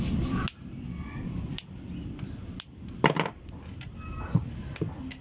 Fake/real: real